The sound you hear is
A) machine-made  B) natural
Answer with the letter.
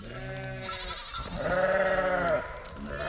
B